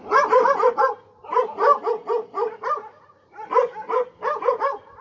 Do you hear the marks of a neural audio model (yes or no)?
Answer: no